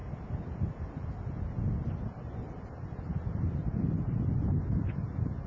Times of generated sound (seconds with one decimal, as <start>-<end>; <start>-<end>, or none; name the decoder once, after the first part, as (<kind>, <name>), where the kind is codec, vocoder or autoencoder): 3.6-4.9 (vocoder, BigVGAN v2)